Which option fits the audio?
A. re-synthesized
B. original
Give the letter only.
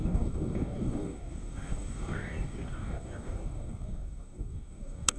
A